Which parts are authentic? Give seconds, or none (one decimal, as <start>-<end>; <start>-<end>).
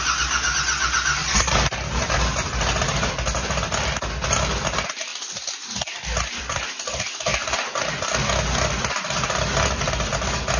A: 0.0-1.2; 2.1-10.6